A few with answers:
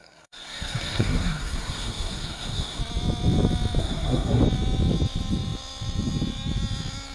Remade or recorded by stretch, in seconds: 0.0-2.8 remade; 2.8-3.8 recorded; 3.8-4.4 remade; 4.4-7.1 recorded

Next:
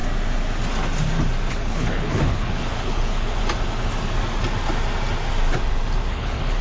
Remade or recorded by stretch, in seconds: 0.0-1.5 recorded; 1.5-3.4 remade; 3.4-6.1 recorded; 6.1-6.6 remade

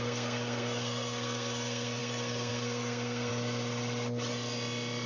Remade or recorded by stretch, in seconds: 0.0-3.3 remade; 3.3-5.1 recorded